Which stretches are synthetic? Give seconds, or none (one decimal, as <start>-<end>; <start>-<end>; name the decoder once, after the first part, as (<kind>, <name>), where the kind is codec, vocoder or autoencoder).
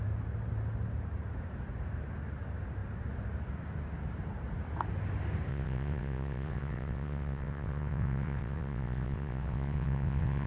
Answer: 5.5-10.5 (vocoder, WaveNeXt)